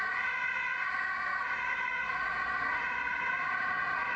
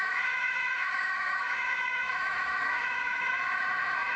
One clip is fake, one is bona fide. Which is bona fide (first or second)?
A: first